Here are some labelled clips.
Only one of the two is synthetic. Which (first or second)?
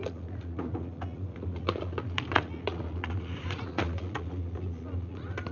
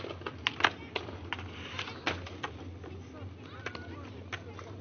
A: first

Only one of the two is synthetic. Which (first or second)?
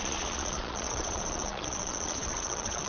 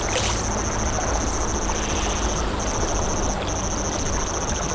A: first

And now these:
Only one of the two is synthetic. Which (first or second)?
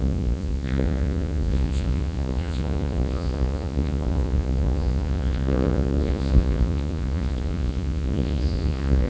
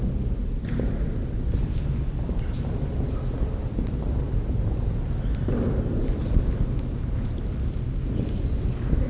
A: first